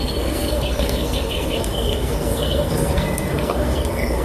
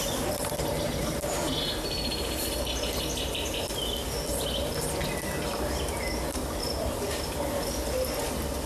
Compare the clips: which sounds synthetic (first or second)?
first